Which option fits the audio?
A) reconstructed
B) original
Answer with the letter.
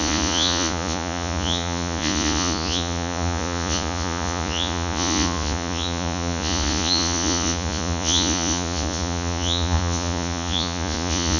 A